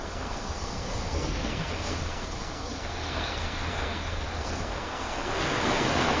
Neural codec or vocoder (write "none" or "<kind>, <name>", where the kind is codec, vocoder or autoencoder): codec, SNAC